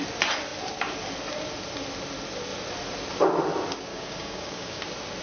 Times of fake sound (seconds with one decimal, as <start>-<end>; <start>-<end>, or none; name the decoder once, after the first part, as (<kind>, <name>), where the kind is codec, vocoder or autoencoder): 3.9-4.8 (codec, DAC)